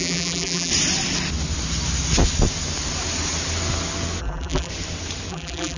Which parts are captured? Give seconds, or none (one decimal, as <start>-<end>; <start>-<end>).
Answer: 0.7-4.2; 4.7-5.3